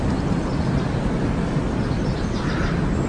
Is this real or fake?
real